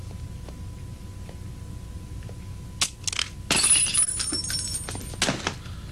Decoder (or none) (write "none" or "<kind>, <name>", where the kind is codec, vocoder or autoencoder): none